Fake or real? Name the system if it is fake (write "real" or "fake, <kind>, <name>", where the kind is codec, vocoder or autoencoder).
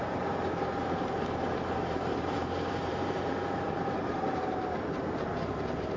fake, vocoder, BigVGAN v2